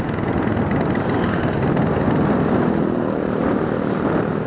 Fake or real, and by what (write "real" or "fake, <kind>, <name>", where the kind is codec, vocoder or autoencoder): real